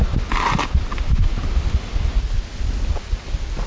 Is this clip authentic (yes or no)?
yes